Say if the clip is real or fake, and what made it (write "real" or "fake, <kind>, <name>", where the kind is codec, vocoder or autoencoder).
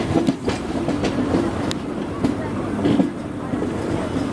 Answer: real